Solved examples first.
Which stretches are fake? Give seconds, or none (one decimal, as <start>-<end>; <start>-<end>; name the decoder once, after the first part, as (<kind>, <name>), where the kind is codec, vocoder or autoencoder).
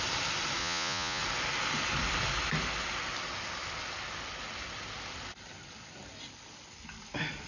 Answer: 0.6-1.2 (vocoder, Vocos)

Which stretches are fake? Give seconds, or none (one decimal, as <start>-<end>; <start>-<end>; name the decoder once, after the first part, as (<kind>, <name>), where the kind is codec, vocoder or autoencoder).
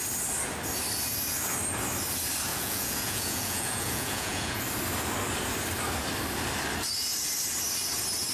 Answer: 2.5-4.6 (vocoder, Vocos)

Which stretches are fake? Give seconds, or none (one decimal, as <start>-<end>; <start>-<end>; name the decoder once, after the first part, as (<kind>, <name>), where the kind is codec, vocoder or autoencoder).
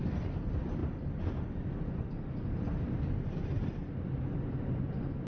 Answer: none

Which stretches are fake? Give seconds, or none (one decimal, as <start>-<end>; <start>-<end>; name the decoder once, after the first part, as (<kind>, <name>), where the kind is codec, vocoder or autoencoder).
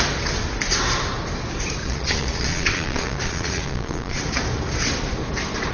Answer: 1.8-4.2 (vocoder, Vocos)